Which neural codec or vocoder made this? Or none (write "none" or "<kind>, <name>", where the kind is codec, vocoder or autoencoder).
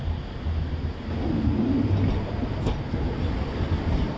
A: none